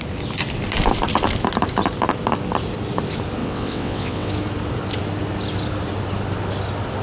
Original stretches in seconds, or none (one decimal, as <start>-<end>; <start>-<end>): 0.0-3.4; 4.3-7.0